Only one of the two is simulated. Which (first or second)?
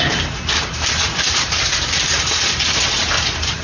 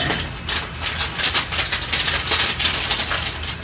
first